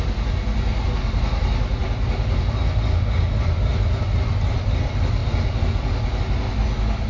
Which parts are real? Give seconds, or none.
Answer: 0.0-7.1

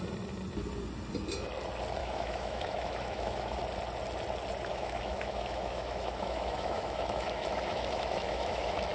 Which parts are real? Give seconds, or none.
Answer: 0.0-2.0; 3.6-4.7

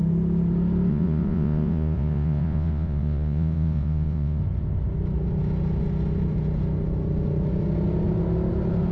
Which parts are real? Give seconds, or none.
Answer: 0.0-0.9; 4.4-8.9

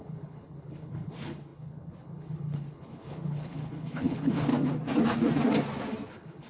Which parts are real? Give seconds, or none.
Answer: 4.5-6.1